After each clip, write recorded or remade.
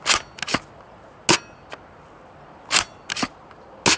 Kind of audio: recorded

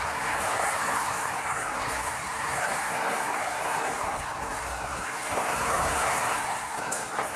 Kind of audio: remade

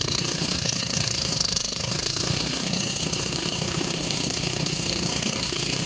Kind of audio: remade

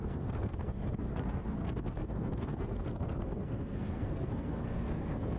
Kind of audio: remade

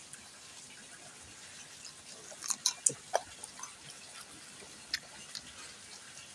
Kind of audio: recorded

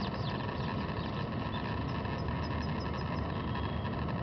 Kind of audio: recorded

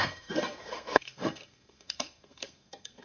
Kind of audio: remade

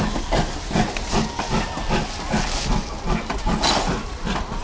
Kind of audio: recorded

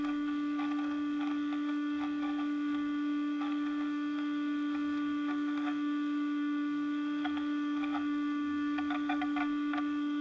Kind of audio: remade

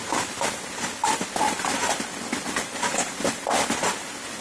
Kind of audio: recorded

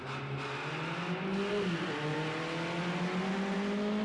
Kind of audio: recorded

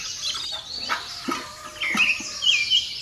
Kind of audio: recorded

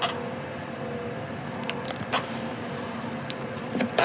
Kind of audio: recorded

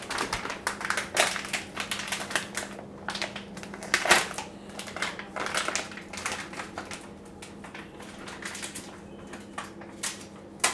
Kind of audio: recorded